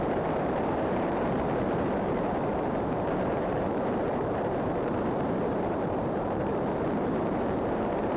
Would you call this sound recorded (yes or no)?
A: no